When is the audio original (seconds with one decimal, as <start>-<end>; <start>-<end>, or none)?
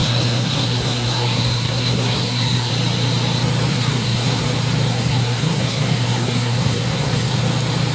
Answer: 2.7-3.7; 4.4-4.9; 7.4-7.9